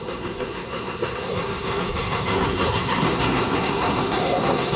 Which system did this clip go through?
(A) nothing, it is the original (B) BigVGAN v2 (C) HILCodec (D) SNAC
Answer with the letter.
D